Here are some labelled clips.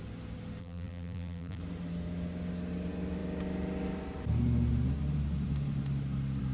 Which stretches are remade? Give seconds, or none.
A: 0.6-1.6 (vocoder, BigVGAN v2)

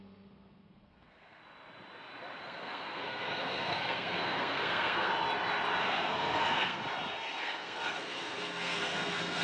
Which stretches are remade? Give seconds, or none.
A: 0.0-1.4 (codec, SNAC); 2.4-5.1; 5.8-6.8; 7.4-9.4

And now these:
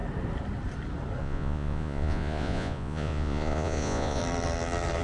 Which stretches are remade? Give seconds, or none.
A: 1.2-4.2 (vocoder, Vocos)